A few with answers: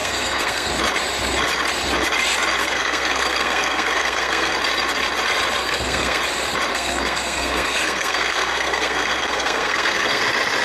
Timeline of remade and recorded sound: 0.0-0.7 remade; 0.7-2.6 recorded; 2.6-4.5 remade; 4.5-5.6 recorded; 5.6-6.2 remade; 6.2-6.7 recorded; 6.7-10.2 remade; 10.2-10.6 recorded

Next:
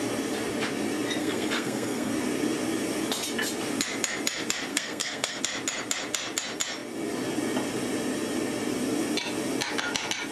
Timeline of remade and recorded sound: 0.0-1.2 recorded; 1.2-2.1 remade; 2.1-4.7 recorded; 4.7-5.4 remade; 5.4-10.3 recorded

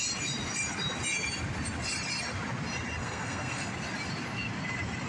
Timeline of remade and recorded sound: 0.0-3.0 recorded; 3.0-3.7 remade; 3.7-5.1 recorded